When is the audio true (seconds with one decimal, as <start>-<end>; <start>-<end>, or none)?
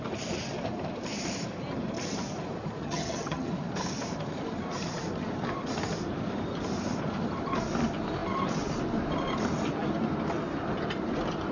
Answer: 0.0-2.8; 3.5-11.5